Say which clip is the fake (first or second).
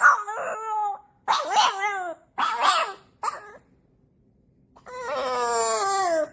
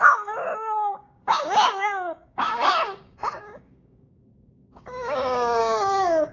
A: second